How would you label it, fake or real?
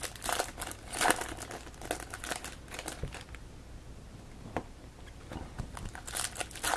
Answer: real